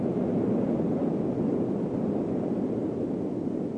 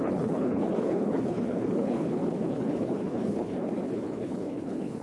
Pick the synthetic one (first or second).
second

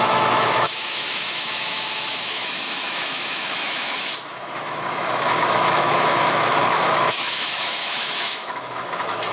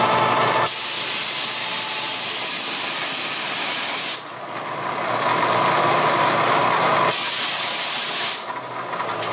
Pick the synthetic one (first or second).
first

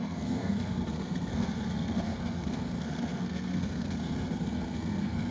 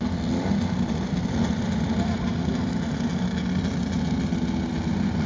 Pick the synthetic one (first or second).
first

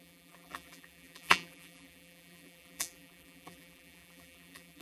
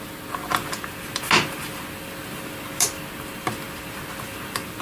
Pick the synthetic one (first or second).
first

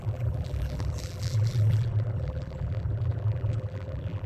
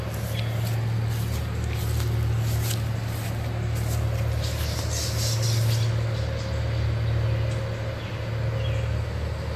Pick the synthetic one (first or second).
first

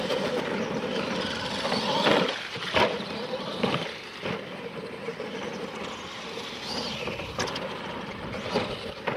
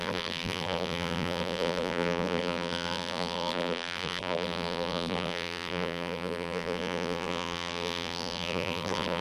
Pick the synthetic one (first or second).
second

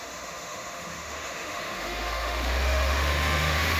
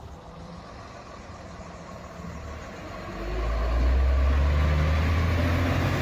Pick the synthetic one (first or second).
first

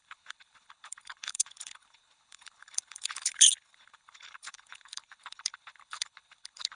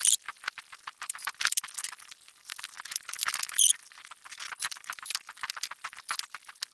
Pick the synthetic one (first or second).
first